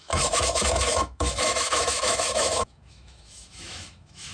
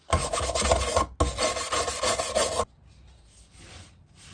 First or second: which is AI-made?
first